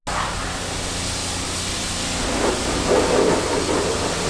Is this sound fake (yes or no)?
no